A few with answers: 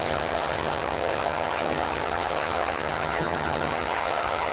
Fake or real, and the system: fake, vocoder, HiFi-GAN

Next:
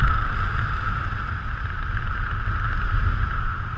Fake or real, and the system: real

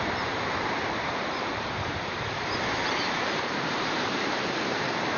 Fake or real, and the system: fake, vocoder, BigVGAN v2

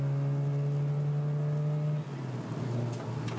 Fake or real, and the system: real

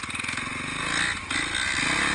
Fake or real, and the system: real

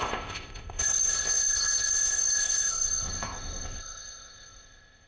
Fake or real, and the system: fake, codec, ZipCodec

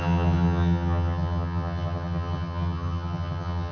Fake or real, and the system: fake, vocoder, HiFi-GAN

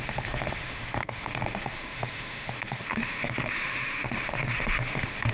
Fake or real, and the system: fake, autoencoder, DAC-VAE